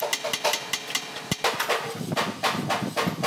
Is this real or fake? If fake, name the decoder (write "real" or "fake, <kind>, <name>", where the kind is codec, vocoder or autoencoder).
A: real